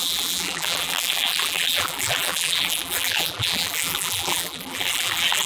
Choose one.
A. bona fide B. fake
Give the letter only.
B